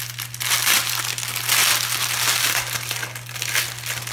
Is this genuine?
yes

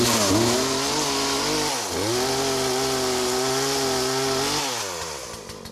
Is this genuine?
yes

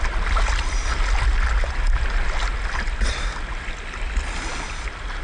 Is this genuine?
yes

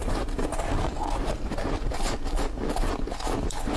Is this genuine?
yes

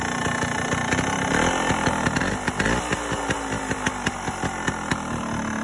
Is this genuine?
yes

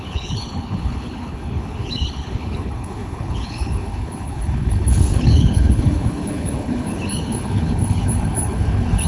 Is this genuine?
no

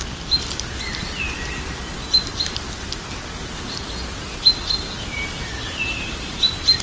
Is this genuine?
yes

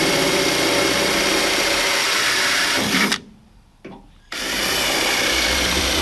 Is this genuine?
no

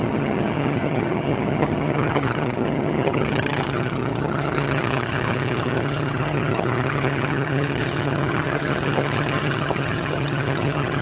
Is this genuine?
no